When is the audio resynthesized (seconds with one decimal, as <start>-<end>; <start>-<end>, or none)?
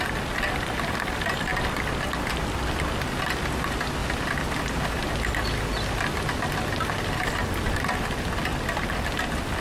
none